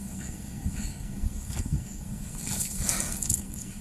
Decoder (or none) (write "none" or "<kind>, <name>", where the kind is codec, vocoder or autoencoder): codec, SNAC